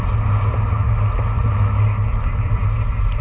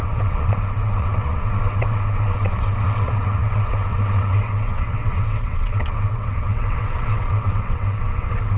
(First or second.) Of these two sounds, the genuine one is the first